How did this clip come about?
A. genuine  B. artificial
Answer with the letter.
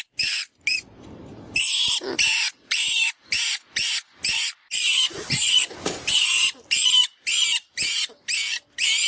A